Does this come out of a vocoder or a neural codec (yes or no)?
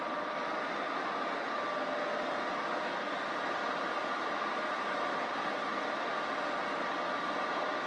no